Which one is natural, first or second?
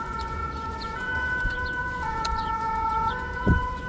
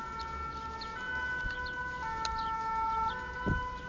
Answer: second